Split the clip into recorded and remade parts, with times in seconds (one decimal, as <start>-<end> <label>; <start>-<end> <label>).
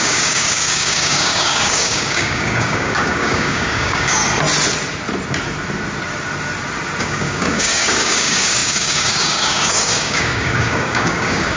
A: 0.0-4.2 remade; 4.2-7.0 recorded; 7.0-11.6 remade